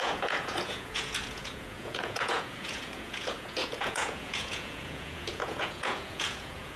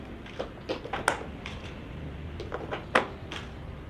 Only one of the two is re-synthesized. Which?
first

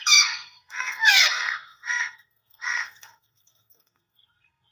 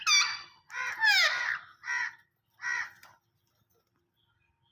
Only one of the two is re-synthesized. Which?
first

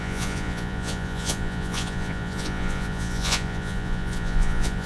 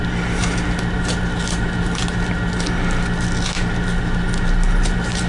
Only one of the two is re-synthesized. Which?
first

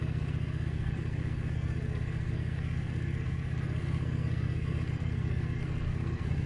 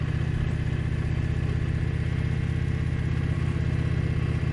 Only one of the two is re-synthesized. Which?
first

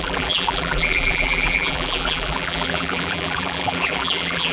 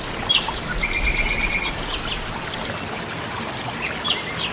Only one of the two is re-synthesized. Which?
first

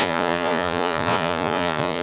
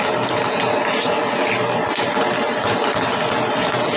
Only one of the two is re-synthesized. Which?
first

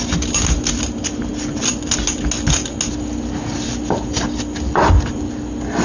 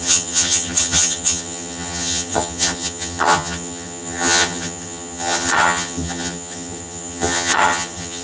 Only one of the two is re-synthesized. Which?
second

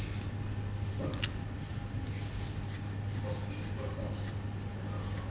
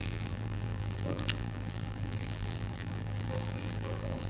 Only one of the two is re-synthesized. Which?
second